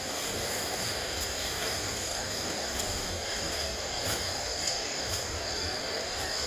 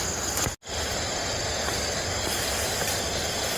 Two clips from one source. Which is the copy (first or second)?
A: first